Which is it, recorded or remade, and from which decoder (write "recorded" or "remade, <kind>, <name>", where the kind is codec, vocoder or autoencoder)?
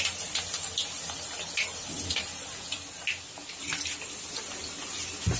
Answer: recorded